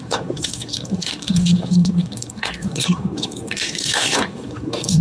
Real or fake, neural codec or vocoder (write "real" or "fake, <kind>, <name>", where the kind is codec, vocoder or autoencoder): fake, codec, SNAC